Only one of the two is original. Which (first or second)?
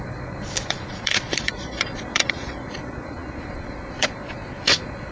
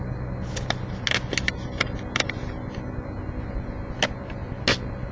second